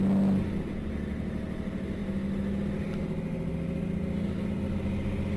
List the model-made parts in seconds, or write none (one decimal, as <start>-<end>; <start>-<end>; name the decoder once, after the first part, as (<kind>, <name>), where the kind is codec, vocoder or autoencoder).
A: none